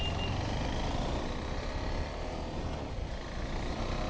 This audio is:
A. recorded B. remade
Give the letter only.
A